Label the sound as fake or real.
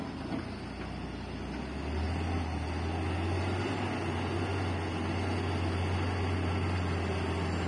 real